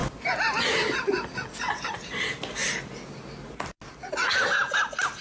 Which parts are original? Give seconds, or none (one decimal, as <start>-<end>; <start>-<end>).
0.0-5.2